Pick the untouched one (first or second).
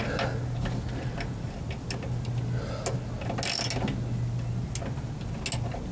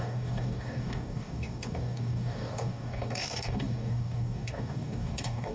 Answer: first